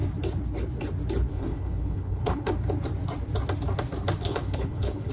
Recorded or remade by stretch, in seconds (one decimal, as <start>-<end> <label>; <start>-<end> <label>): 0.0-1.3 recorded; 1.3-2.5 remade; 2.5-4.3 recorded; 4.3-5.1 remade